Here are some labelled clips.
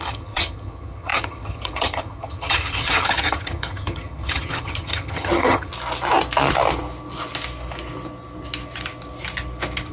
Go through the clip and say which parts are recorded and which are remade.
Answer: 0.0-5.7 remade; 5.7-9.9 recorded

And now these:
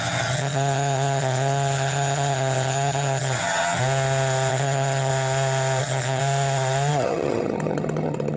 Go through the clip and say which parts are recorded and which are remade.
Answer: 0.0-3.8 remade; 3.8-4.5 recorded; 4.5-5.1 remade; 5.1-5.8 recorded; 5.8-6.2 remade; 6.2-6.9 recorded; 6.9-8.4 remade

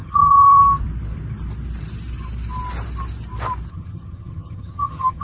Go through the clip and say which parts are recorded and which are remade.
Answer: 0.0-0.6 remade; 0.6-3.7 recorded; 3.7-5.2 remade